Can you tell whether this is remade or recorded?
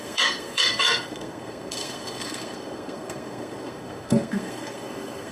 remade